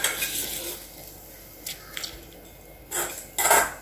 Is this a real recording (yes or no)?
yes